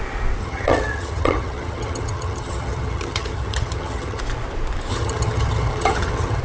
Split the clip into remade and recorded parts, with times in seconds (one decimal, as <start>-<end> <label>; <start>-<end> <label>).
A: 0.0-0.4 recorded; 0.4-4.2 remade; 4.2-4.9 recorded; 4.9-6.4 remade